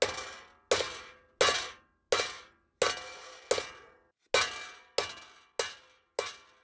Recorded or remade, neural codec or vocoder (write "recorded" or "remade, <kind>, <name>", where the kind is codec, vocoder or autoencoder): recorded